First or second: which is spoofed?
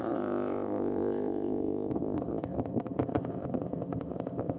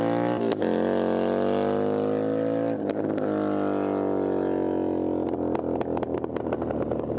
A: first